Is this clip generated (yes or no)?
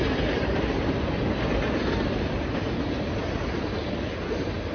no